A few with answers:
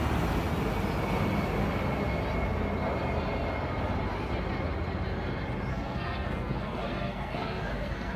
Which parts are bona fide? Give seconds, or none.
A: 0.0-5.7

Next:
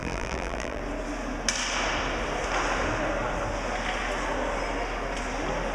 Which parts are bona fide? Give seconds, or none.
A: 0.8-5.7

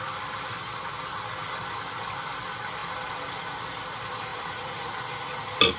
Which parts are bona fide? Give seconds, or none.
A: 0.0-4.3; 4.9-5.8

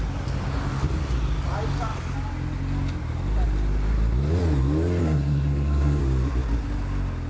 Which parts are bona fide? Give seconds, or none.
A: 0.0-5.0; 6.0-7.3

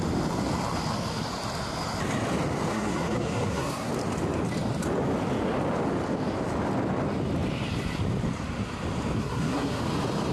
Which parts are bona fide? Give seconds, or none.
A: 0.0-2.7; 3.9-9.2; 9.8-10.3